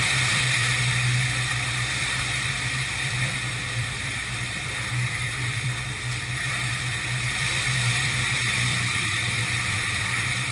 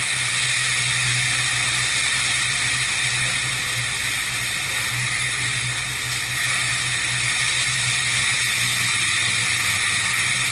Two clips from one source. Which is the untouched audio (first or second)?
second